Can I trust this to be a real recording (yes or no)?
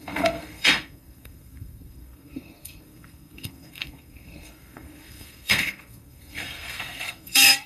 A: no